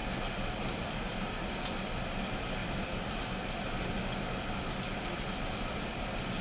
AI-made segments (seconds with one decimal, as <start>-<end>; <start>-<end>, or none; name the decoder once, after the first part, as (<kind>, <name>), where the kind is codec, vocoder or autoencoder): 0.8-6.4 (vocoder, BigVGAN v2)